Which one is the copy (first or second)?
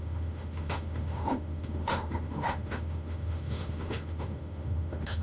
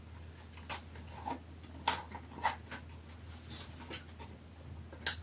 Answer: first